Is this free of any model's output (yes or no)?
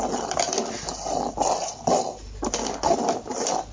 yes